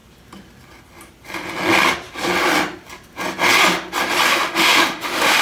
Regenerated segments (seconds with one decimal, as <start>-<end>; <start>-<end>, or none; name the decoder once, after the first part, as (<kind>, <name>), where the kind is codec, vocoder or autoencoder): 4.3-5.4 (autoencoder, DAC-VAE)